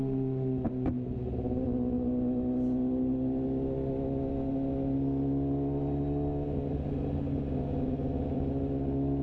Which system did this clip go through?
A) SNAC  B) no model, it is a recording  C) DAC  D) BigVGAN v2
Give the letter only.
B